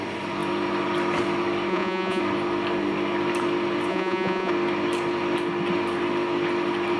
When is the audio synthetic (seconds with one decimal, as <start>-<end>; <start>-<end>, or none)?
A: 1.7-2.2; 3.9-4.5